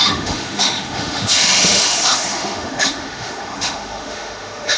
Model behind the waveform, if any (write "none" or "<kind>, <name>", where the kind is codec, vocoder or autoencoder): autoencoder, DAC-VAE